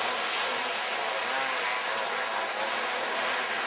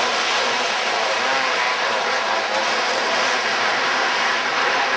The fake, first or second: second